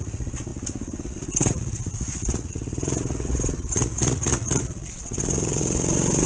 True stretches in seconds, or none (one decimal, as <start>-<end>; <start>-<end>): none